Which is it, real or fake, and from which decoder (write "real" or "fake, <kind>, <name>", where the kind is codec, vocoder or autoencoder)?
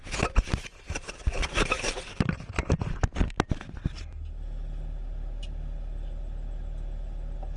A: real